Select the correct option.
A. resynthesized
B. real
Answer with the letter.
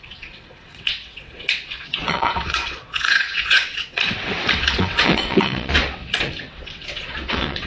A